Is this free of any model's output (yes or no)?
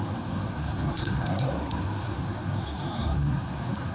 no